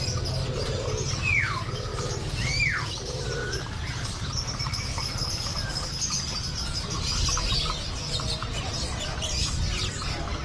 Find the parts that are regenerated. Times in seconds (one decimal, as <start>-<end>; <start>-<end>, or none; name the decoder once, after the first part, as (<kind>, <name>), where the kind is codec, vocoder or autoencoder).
1.9-2.9 (vocoder, BigVGAN v2); 3.4-7.5; 8.4-9.5